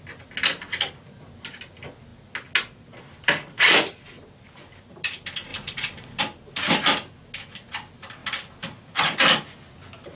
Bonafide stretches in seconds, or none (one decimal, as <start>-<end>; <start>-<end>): 0.0-10.2